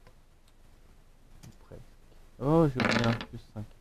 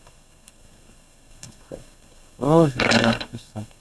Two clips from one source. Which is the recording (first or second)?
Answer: first